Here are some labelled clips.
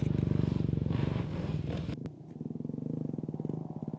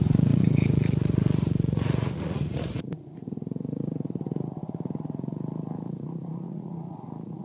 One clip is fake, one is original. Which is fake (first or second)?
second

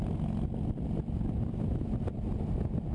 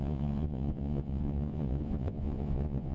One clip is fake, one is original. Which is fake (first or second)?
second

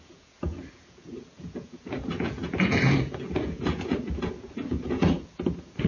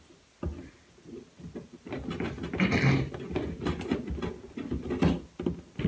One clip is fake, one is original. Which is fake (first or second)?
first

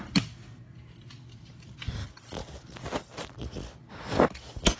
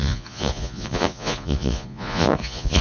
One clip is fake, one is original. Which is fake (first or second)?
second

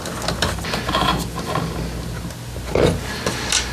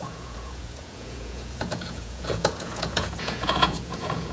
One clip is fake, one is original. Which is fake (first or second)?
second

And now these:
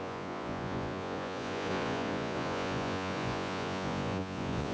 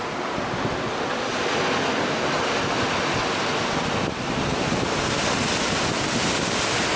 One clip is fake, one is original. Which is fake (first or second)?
first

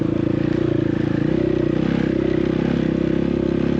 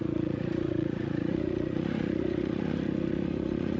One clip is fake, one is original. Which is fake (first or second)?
second